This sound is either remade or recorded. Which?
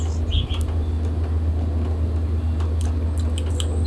recorded